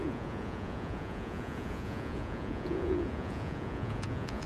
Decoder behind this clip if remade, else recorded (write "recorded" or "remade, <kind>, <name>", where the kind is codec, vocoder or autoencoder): remade, vocoder, Vocos